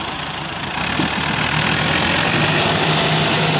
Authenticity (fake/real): real